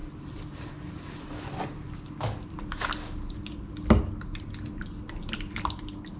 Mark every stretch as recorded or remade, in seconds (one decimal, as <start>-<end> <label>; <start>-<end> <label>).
0.0-6.2 recorded